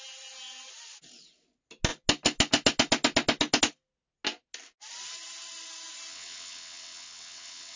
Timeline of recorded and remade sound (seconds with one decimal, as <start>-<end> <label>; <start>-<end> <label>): 0.0-6.1 recorded; 6.1-7.8 remade